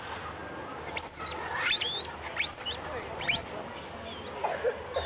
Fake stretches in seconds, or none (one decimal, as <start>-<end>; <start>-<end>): none